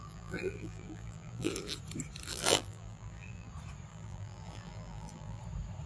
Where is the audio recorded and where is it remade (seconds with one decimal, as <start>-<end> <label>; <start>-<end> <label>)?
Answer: 0.0-1.5 remade; 1.5-2.3 recorded; 2.3-3.5 remade; 3.5-3.9 recorded; 3.9-5.4 remade; 5.4-5.9 recorded